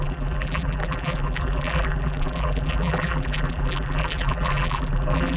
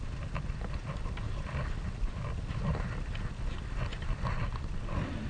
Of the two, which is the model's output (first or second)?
first